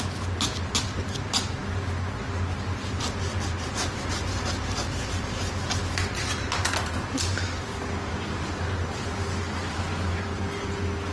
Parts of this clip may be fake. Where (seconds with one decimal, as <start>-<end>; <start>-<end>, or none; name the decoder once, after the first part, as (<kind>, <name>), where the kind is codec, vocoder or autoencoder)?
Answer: none